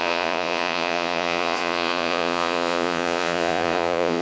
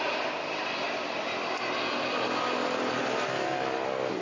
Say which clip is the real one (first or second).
second